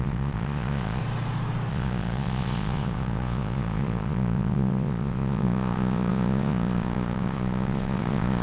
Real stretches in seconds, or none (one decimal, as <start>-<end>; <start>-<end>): 1.0-1.7